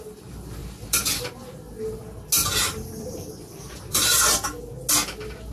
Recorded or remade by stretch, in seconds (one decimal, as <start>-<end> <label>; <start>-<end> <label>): 0.0-0.6 recorded; 0.6-1.3 remade; 1.3-2.4 recorded; 2.4-4.2 remade; 4.2-5.5 recorded